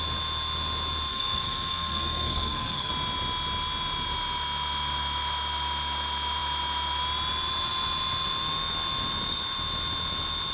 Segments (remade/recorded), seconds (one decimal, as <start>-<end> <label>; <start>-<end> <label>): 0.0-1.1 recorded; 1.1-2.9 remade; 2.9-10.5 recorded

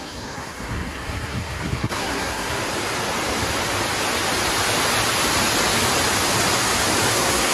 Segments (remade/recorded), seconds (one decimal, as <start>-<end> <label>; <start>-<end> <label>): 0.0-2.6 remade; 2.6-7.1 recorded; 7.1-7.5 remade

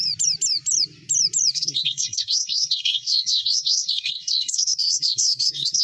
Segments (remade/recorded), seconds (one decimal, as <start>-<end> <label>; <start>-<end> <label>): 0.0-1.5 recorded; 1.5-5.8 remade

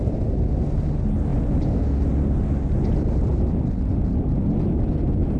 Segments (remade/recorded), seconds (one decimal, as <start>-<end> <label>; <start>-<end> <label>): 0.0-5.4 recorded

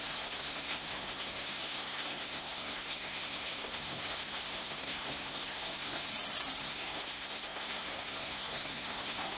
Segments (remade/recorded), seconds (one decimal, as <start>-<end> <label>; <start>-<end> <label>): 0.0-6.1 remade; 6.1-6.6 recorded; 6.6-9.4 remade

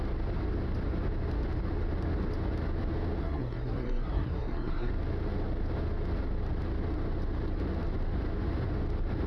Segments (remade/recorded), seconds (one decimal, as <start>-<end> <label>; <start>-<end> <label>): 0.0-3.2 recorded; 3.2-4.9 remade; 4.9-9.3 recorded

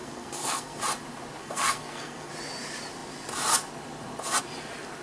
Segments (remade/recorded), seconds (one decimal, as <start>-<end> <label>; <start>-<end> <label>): 0.0-0.8 remade; 0.8-1.4 recorded; 1.4-2.3 remade; 2.3-5.0 recorded

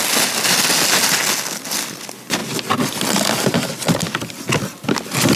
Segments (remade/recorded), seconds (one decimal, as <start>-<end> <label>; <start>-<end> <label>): 0.0-5.4 recorded